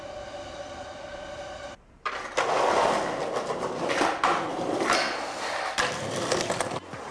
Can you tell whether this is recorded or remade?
recorded